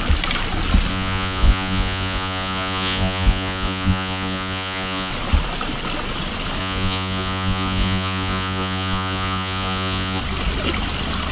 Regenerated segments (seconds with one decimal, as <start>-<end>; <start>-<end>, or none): 0.9-5.1; 6.6-10.2